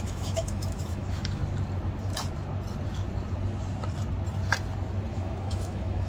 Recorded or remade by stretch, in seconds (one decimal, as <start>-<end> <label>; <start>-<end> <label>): 0.0-1.4 remade; 1.4-5.1 recorded; 5.1-6.1 remade